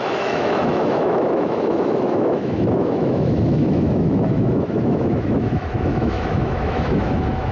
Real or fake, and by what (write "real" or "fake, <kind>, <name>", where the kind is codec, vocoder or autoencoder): fake, autoencoder, DAC-VAE